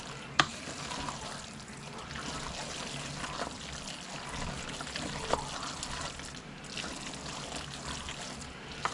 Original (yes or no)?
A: yes